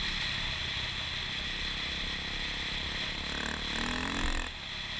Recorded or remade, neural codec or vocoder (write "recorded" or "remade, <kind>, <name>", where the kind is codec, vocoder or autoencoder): recorded